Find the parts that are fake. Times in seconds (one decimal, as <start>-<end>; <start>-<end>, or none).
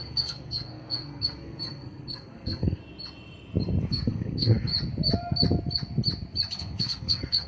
0.0-2.8; 3.9-4.7; 6.6-7.5